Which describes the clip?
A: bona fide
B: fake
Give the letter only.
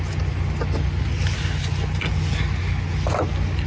A